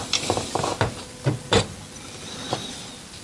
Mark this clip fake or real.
real